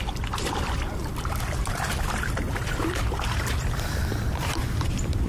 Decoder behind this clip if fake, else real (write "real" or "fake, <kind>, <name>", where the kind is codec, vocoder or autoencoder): fake, vocoder, BigVGAN v2